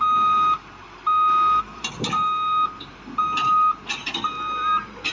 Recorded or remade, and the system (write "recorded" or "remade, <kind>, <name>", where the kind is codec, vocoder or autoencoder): recorded